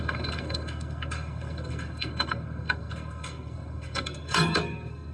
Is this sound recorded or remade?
remade